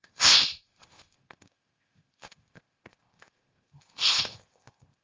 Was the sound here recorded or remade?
remade